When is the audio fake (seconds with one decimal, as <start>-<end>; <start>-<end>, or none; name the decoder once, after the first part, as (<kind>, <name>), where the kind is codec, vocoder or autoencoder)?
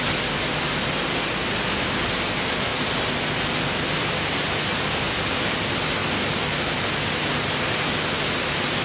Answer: none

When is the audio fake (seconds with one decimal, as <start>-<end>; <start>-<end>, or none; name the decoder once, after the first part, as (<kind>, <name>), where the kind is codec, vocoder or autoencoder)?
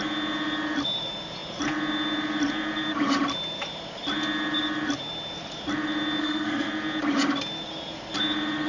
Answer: 6.2-6.7 (codec, SNAC)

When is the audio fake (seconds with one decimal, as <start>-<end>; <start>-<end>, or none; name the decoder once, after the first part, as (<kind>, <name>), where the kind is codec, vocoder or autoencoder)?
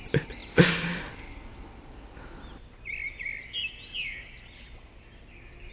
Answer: none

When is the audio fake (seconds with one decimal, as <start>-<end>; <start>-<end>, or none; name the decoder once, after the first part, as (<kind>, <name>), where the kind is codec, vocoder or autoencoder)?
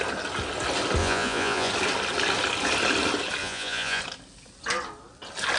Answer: 1.0-1.7 (vocoder, Vocos); 3.4-4.0